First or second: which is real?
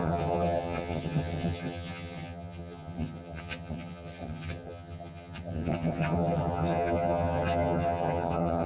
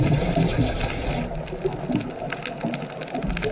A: second